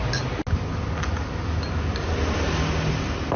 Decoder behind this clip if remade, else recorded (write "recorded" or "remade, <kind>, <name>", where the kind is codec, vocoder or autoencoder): recorded